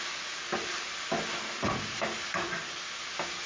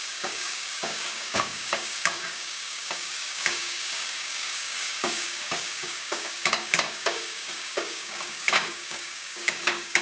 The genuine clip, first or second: first